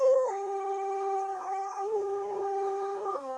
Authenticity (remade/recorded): remade